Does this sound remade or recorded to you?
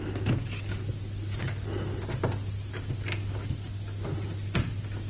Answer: recorded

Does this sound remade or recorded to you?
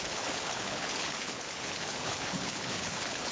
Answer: remade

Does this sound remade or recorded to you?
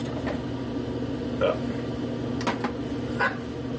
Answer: recorded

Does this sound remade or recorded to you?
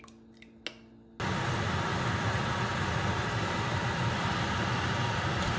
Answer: recorded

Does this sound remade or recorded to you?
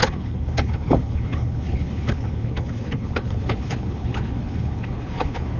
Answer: remade